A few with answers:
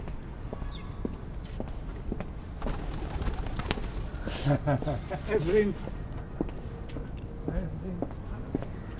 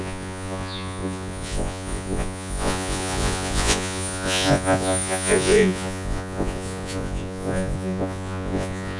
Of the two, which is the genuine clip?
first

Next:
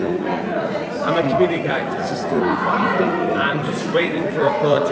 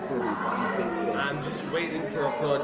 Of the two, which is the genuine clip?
second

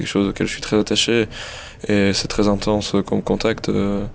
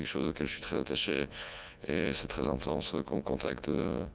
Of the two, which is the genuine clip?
first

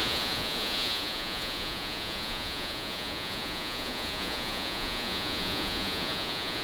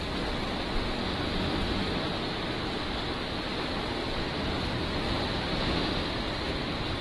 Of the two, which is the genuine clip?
second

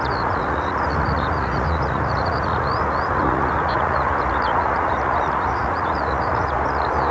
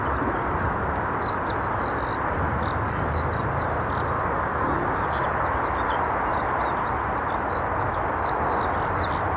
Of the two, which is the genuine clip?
second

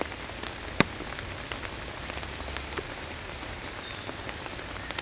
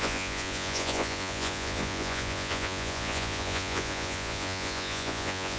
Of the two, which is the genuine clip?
first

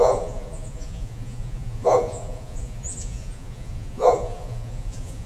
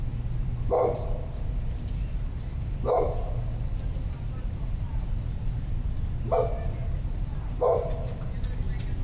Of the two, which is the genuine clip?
second